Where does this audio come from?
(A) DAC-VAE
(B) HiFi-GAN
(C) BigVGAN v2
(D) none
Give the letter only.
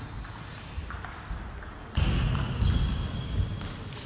D